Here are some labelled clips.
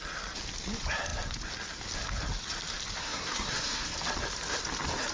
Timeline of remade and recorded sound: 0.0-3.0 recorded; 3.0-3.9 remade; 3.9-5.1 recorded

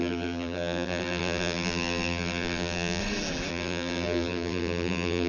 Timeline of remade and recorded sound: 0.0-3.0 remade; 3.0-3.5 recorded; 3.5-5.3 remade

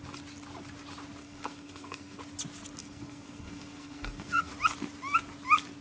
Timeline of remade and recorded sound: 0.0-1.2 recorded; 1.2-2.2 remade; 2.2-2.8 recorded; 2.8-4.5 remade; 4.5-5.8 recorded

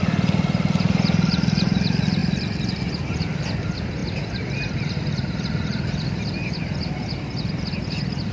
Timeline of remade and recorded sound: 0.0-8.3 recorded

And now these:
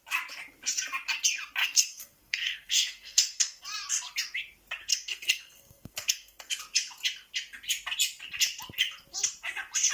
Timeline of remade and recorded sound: 0.0-1.6 recorded; 1.6-3.6 remade; 3.6-4.9 recorded; 4.9-6.6 remade; 6.6-9.9 recorded